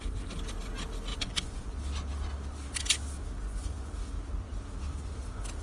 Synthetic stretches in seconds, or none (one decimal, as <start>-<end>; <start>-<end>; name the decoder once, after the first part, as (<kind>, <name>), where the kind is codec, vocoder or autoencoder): 1.1-1.8 (vocoder, Vocos); 3.4-3.9